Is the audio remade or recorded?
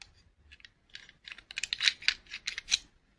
recorded